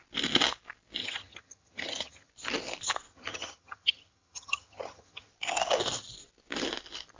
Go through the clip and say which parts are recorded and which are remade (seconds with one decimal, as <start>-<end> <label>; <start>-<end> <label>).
0.0-1.0 recorded; 1.0-2.3 remade; 2.3-3.1 recorded; 3.1-5.3 remade; 5.3-7.2 recorded